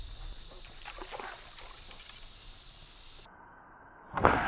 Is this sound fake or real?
real